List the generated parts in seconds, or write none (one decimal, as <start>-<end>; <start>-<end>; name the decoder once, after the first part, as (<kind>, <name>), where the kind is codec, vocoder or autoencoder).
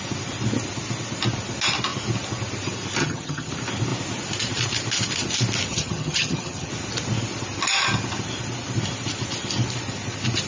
3.0-3.5 (vocoder, HiFi-GAN); 5.7-6.7